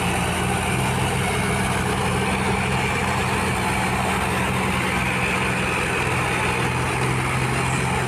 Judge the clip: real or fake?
real